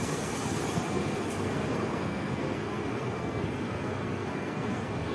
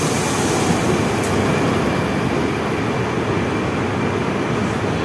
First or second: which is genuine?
second